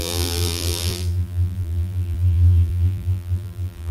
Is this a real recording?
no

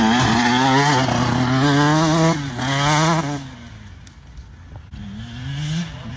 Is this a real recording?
yes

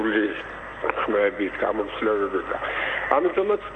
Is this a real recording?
yes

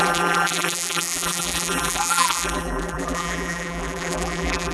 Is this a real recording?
no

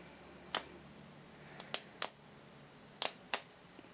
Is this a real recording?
yes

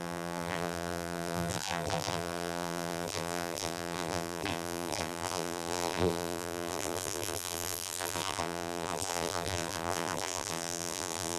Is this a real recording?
no